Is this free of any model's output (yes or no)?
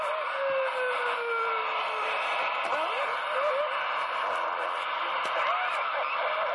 yes